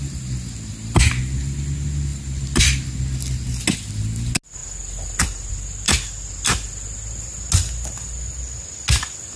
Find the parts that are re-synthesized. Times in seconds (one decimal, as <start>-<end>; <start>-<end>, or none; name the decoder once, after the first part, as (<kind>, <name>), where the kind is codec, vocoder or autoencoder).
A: 2.1-3.0 (vocoder, BigVGAN v2)